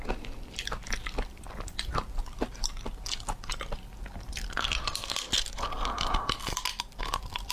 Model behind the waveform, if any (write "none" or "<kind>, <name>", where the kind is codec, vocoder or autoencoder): none